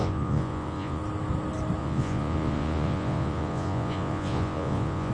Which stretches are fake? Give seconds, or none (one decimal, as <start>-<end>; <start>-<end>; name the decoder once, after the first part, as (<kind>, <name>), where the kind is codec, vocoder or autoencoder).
0.0-1.0 (vocoder, Vocos); 1.8-5.1